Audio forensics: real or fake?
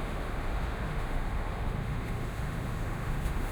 fake